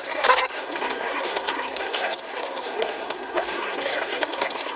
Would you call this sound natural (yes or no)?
no